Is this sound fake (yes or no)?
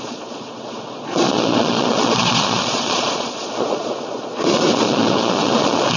yes